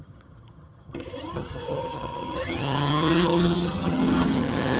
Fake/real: fake